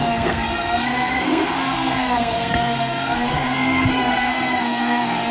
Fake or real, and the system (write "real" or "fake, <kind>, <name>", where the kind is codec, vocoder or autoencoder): fake, codec, SNAC